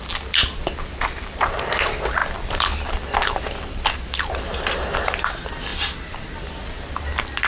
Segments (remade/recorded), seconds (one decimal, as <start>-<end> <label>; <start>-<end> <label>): 0.0-7.5 recorded